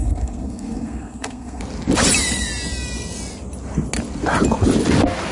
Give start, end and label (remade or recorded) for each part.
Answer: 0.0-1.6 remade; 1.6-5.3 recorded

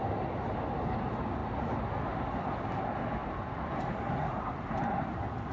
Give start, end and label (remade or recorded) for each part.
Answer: 0.0-5.5 recorded

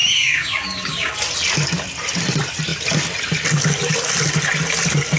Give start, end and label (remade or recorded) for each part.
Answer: 0.0-1.1 remade; 1.1-5.2 recorded

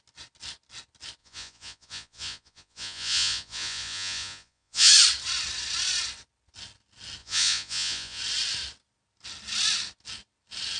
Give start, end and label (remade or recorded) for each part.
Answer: 0.0-1.2 recorded; 1.2-4.9 remade; 4.9-7.2 recorded; 7.2-8.2 remade; 8.2-10.8 recorded

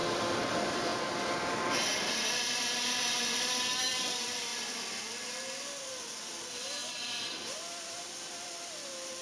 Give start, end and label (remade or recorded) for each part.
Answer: 0.0-9.2 remade

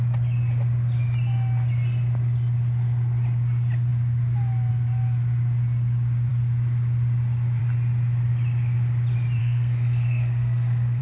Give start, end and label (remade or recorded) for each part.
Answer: 0.0-9.4 recorded; 9.4-11.0 remade